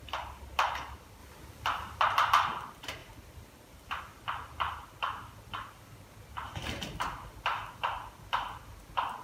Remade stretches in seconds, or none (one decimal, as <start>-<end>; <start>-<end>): 3.0-4.0

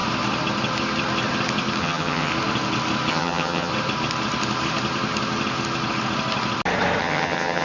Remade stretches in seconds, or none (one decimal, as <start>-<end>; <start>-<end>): 1.8-2.3; 3.1-3.7; 7.0-7.6

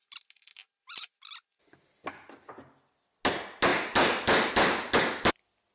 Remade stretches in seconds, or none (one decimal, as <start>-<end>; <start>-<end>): none

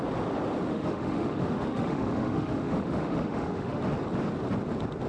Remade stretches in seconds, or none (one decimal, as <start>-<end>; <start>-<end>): 0.7-3.8

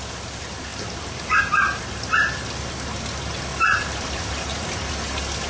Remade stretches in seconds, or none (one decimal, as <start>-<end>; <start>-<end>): 0.7-1.4; 3.5-4.9

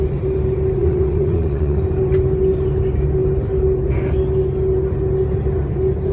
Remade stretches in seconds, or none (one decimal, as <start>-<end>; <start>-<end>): 0.8-1.8

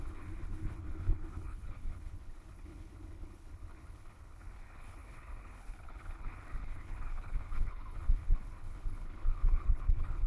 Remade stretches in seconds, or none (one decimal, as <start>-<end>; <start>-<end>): 0.0-10.3

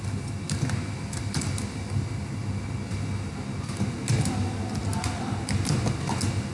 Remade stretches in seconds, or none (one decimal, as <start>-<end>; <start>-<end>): none